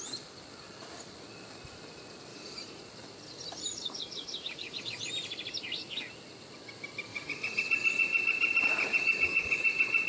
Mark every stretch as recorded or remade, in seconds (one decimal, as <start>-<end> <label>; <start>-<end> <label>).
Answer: 0.0-2.3 recorded; 2.3-2.9 remade; 2.9-3.7 recorded; 3.7-4.8 remade; 4.8-7.1 recorded; 7.1-10.1 remade